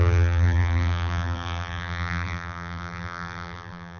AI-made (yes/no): yes